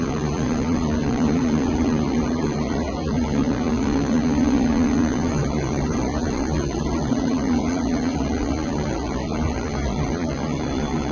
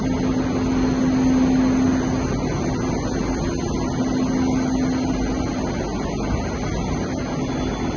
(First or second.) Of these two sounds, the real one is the second